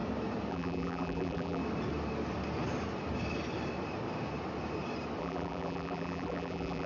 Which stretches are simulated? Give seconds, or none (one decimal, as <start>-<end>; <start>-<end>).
0.5-1.6; 5.2-6.9

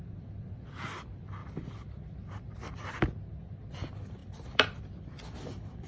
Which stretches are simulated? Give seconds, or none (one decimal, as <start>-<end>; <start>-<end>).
1.4-3.0; 4.2-4.8

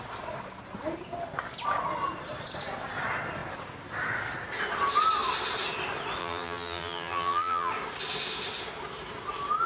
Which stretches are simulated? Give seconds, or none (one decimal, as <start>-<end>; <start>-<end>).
6.2-7.7

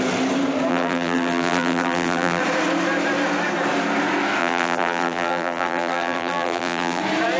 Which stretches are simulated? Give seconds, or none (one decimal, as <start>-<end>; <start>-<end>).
0.7-2.4; 4.4-7.0

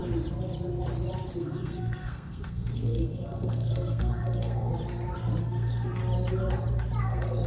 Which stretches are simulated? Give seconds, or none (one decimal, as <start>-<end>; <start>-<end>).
1.4-4.7; 5.4-6.0; 7.0-7.5

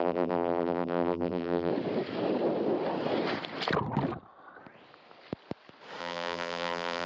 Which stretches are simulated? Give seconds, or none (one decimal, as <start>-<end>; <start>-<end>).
0.0-1.7; 6.0-7.1

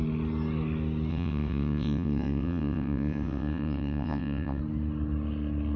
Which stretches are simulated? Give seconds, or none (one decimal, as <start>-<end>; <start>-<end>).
1.1-4.6